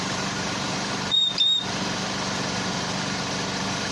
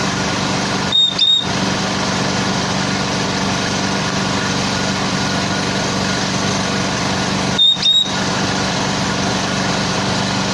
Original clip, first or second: second